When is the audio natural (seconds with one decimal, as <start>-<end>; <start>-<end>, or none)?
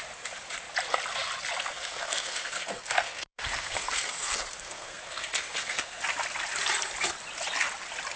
0.0-1.7; 6.0-8.2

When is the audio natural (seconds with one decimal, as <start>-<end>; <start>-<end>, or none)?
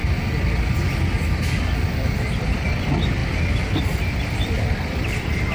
0.0-0.7; 1.2-2.3; 3.2-3.8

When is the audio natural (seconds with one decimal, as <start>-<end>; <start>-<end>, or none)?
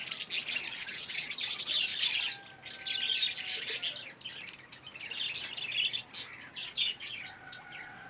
0.0-0.7; 1.9-6.5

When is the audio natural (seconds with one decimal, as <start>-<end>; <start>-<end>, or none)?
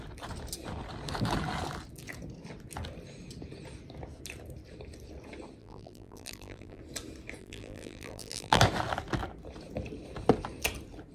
0.0-5.6; 6.8-7.4; 8.6-11.1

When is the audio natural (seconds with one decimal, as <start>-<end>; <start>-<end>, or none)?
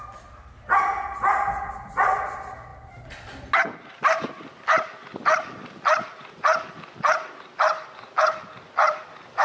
0.0-9.4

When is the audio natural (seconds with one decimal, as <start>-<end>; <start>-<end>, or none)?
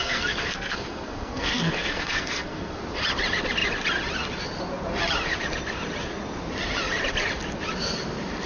2.8-8.5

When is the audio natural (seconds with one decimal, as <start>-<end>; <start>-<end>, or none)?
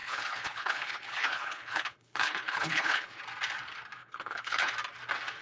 3.2-4.0; 4.7-5.4